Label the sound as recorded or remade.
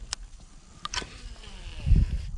recorded